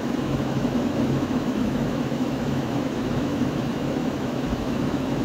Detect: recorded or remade remade